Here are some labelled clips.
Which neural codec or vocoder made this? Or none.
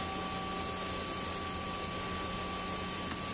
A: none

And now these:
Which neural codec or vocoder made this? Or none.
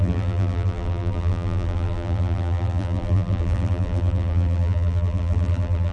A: vocoder, BigVGAN v2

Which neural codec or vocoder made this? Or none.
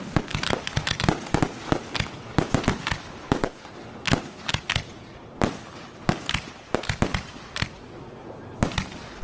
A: none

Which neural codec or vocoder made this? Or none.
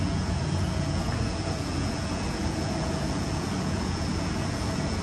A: vocoder, Vocos